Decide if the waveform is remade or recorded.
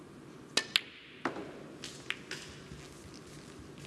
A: recorded